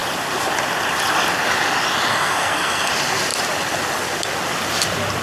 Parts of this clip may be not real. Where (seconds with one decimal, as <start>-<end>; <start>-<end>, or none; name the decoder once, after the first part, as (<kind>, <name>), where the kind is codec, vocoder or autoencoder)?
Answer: 2.1-2.9 (codec, SNAC)